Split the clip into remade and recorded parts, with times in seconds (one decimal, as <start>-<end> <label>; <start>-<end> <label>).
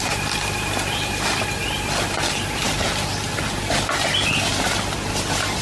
0.0-4.5 remade; 4.5-5.1 recorded; 5.1-5.6 remade